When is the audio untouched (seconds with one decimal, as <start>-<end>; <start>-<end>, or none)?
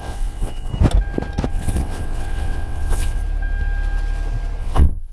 0.7-1.5; 3.2-4.6